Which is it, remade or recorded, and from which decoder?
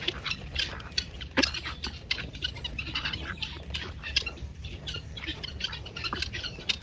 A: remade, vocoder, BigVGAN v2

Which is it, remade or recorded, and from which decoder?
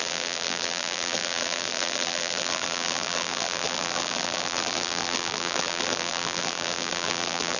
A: remade, vocoder, BigVGAN v2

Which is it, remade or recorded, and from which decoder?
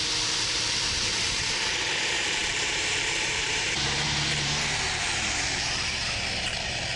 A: remade, vocoder, BigVGAN v2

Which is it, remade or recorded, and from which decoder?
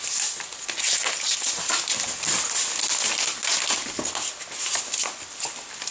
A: recorded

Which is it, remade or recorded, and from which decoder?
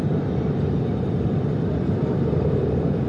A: remade, vocoder, BigVGAN v2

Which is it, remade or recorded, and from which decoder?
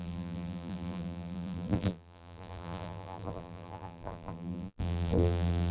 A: remade, vocoder, BigVGAN v2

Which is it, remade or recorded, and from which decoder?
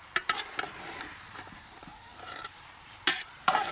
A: remade, vocoder, BigVGAN v2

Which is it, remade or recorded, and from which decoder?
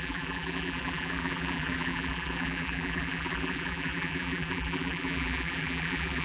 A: remade, vocoder, BigVGAN v2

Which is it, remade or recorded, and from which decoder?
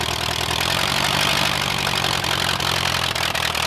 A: recorded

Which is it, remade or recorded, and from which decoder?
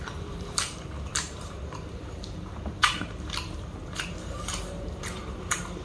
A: remade, vocoder, BigVGAN v2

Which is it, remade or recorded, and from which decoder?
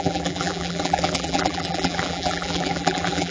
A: remade, vocoder, BigVGAN v2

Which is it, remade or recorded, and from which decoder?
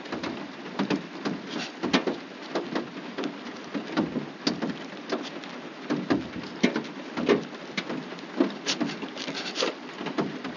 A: recorded